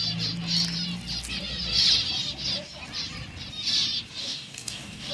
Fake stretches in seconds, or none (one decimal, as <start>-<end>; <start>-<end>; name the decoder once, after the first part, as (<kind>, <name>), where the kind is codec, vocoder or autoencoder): 4.2-5.1 (codec, DAC)